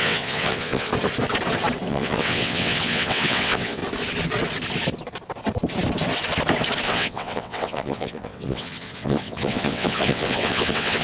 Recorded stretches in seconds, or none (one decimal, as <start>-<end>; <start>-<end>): 0.9-1.9; 3.8-6.9